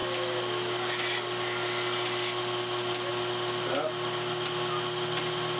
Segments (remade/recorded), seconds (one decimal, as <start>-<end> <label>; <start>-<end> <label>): 0.0-5.6 recorded